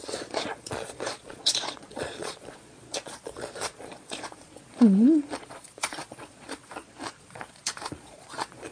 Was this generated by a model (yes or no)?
yes